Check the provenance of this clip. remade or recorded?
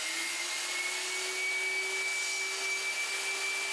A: recorded